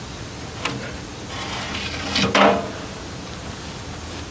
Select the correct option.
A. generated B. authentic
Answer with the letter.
B